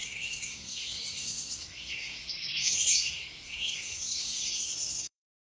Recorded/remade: remade